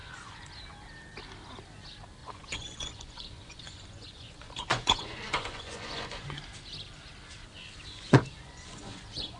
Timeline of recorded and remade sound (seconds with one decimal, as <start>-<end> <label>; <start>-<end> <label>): 0.0-0.5 remade; 0.5-2.2 recorded; 2.2-6.4 remade; 6.4-7.9 recorded; 7.9-9.4 remade

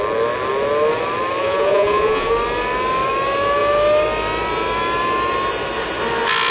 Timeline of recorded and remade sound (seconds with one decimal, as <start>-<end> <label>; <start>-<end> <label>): 0.0-1.4 recorded; 1.4-2.3 remade; 2.3-6.5 recorded

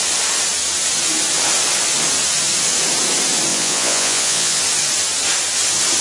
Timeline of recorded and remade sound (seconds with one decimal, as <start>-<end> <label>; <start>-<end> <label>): 0.0-3.5 recorded; 3.5-4.6 remade; 4.6-6.0 recorded

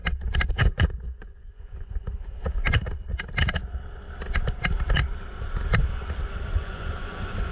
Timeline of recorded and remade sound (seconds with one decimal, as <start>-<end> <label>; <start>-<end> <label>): 0.0-0.5 recorded; 0.5-2.0 remade; 2.0-6.5 recorded; 6.5-7.5 remade

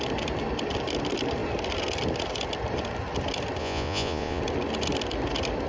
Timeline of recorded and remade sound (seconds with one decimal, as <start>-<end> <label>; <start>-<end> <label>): 0.0-3.6 recorded; 3.6-4.4 remade; 4.4-5.7 recorded

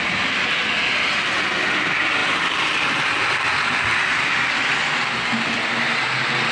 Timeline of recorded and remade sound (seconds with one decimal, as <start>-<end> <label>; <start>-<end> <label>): 0.0-6.5 recorded